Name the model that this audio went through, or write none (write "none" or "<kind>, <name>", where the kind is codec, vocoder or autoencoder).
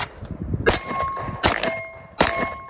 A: none